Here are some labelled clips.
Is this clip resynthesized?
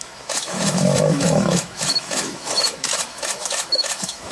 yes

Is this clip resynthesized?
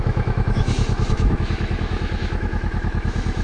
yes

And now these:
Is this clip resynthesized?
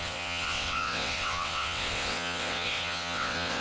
yes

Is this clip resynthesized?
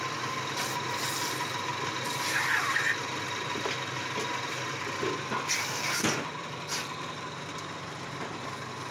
no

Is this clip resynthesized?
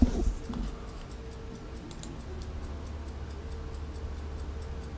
no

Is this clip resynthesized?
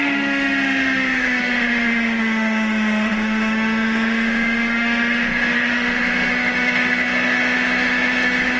yes